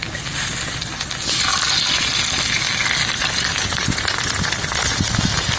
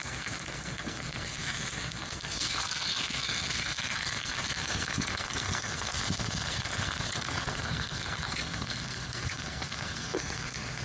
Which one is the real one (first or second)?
first